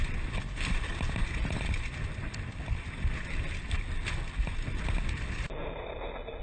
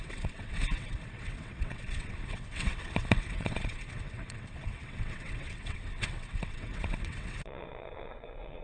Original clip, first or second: first